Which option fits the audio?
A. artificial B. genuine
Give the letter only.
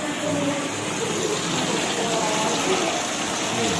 B